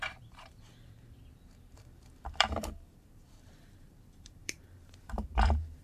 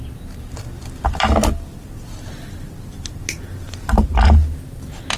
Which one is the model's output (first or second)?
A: first